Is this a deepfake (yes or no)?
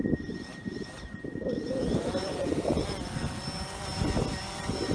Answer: no